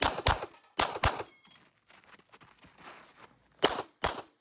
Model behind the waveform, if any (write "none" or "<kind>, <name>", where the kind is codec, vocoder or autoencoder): none